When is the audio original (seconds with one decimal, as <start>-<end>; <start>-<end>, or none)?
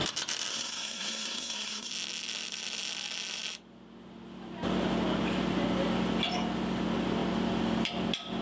0.0-0.5; 1.9-8.4